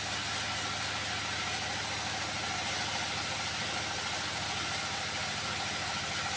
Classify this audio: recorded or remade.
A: recorded